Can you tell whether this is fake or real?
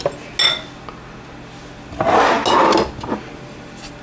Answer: real